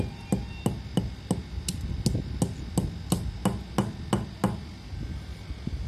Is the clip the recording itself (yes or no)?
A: yes